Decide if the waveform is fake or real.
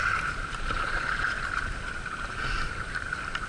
fake